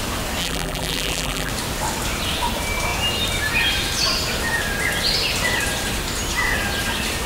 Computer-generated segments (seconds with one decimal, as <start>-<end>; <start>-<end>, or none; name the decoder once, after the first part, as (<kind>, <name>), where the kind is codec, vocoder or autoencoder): 0.4-1.5 (vocoder, BigVGAN v2)